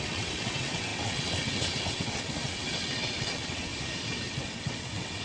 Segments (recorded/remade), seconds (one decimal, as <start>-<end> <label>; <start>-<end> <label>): 0.0-3.7 remade; 3.7-4.3 recorded; 4.3-5.2 remade